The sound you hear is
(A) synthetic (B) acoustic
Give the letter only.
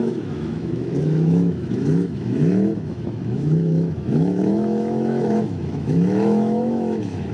A